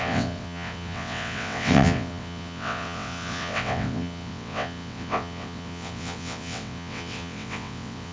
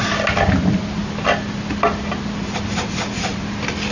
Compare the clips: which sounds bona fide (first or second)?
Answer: second